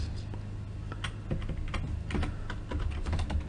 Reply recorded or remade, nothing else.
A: recorded